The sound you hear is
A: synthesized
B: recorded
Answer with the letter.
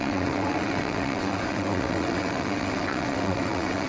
A